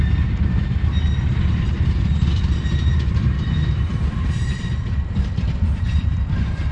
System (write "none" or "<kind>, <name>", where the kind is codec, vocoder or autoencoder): vocoder, BigVGAN v2